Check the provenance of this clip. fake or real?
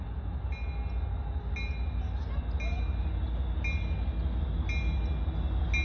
real